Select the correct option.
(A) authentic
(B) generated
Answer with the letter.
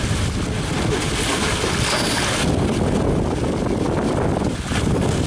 A